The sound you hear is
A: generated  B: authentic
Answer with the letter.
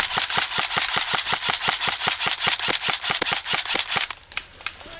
B